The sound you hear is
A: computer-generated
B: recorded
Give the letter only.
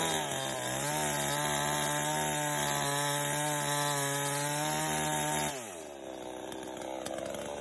B